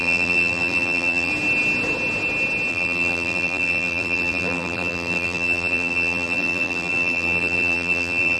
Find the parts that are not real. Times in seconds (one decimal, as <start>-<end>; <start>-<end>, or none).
0.0-1.3; 2.7-8.4